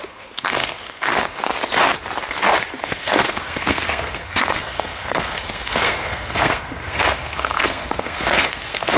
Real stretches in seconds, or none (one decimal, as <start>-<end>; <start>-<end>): 1.4-2.8